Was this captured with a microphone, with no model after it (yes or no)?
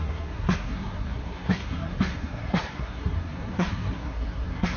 no